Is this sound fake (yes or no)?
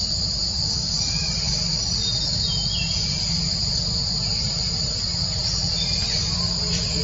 no